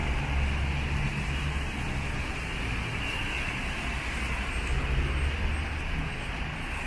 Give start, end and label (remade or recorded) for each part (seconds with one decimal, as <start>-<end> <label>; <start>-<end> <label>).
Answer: 0.0-6.9 recorded